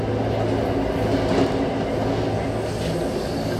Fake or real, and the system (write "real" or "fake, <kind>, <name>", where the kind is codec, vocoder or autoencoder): real